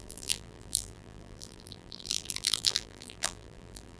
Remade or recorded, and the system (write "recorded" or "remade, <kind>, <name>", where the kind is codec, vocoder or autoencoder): remade, vocoder, BigVGAN v2